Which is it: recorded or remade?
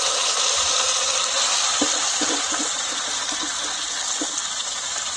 recorded